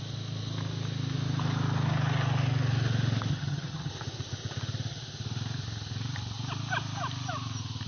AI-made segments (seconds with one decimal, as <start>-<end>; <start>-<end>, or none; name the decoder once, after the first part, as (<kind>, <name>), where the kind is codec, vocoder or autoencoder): 3.3-3.9 (vocoder, HiFi-GAN)